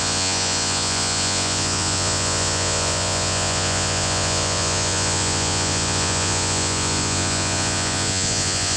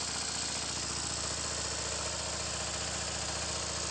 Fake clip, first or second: first